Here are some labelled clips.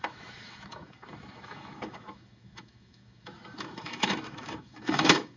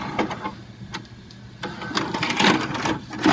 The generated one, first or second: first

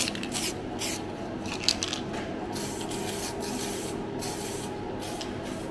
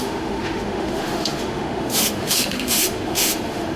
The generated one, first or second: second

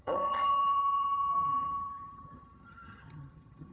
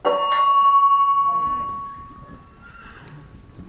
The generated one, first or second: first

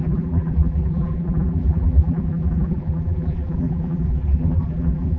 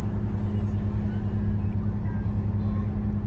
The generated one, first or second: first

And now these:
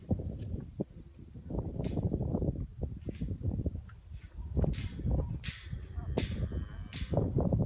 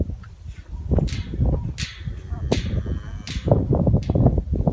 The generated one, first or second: first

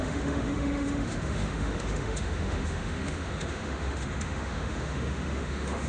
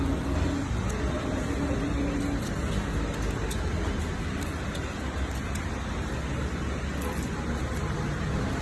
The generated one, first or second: first